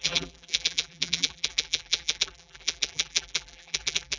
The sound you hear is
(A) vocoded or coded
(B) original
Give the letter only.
A